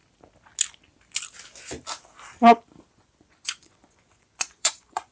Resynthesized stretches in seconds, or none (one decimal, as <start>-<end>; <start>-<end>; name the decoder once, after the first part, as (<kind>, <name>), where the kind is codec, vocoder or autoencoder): 2.9-5.1 (vocoder, Vocos)

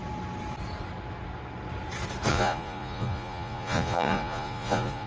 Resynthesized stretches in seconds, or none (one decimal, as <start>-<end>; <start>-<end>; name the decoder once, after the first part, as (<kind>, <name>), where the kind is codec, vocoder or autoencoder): 2.3-5.1 (vocoder, Vocos)

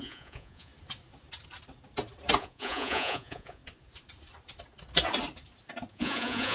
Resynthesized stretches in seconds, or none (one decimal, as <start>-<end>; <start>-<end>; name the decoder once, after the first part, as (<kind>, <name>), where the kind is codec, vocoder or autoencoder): 0.0-0.7 (vocoder, Vocos); 2.4-3.6; 5.9-6.5

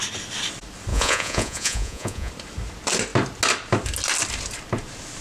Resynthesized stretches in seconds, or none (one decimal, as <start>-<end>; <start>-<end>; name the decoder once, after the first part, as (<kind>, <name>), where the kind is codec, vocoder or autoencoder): 0.9-2.3 (vocoder, Vocos)

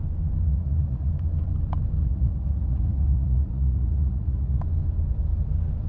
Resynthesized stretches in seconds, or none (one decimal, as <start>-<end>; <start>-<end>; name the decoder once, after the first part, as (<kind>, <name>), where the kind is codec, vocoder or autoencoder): 0.5-1.1 (vocoder, Vocos); 2.0-4.6

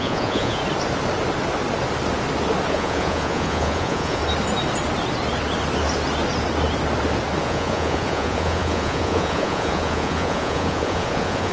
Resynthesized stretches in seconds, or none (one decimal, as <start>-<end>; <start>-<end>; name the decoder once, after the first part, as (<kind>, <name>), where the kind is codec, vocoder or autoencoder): 0.0-0.6 (vocoder, Vocos); 2.7-4.2; 7.4-11.5

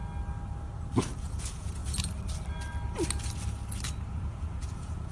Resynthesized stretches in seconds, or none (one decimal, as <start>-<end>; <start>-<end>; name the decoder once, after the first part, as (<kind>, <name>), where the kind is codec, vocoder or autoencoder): 1.2-1.8 (vocoder, Vocos); 4.1-5.1